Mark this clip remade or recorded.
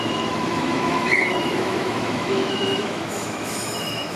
remade